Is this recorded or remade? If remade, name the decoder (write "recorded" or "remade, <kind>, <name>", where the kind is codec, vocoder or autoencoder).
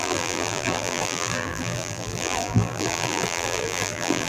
remade, vocoder, BigVGAN v2